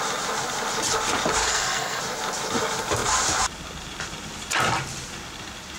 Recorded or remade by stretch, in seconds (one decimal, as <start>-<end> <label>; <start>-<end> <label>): 0.0-1.4 recorded; 1.4-2.0 remade; 2.0-5.8 recorded